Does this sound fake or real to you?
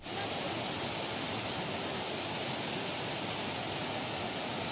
real